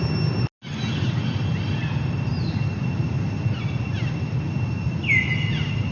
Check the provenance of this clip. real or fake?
real